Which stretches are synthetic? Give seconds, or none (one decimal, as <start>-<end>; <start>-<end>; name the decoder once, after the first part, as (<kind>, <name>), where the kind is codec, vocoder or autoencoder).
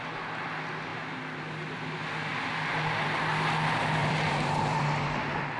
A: 2.3-3.2 (vocoder, BigVGAN v2); 4.0-4.8